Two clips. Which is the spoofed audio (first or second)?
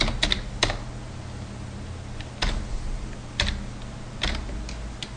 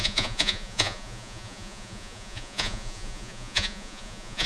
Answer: second